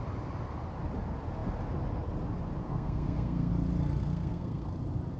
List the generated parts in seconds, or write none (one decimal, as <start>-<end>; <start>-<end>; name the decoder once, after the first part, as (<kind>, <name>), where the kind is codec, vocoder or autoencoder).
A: 2.6-3.5 (codec, SNAC); 4.0-4.7